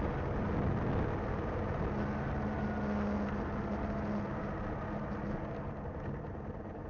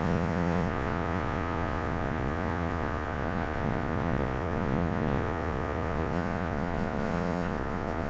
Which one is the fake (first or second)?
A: second